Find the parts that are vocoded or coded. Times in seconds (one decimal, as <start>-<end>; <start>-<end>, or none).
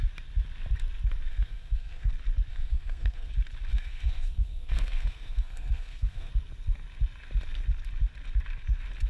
1.3-2.1; 2.5-3.3; 3.7-6.3